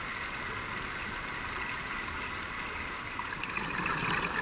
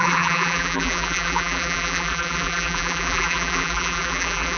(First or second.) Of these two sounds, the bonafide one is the first